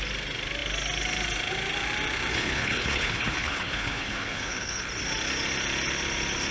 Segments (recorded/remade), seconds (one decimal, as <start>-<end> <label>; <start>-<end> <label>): 0.0-2.3 recorded; 2.3-4.8 remade; 4.8-6.5 recorded